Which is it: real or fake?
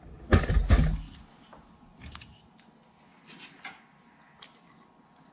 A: real